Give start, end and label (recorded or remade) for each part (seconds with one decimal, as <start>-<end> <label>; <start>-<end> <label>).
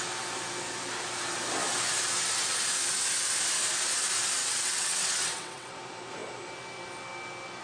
0.0-4.4 recorded; 4.4-5.7 remade; 5.7-7.6 recorded